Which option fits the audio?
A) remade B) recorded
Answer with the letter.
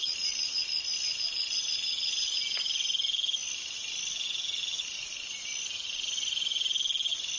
B